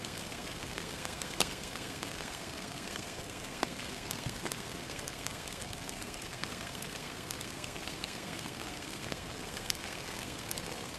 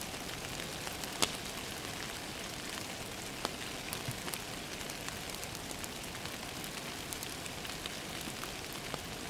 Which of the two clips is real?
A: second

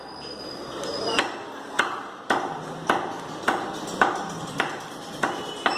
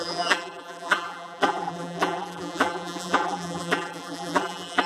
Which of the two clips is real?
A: first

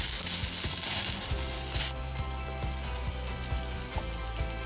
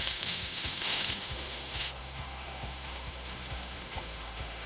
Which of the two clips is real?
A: first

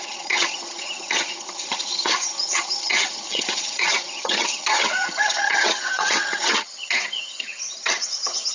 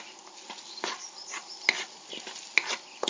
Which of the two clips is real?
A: second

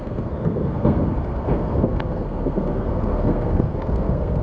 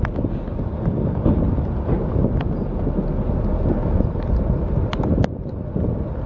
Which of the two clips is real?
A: second